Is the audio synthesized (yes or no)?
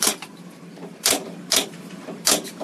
no